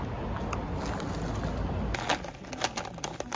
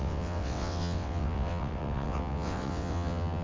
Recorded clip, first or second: first